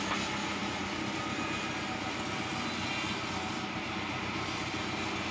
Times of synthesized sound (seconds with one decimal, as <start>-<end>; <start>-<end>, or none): 0.4-1.0